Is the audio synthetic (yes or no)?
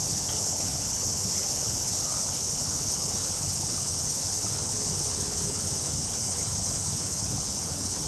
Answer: yes